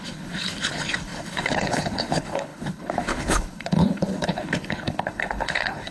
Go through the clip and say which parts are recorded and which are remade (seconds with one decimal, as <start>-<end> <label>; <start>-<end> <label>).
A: 0.0-5.9 remade